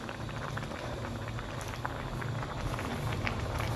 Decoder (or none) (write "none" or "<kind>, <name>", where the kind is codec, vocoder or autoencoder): none